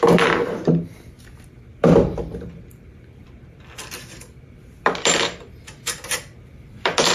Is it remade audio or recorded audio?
remade